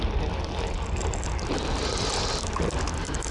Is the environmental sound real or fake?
real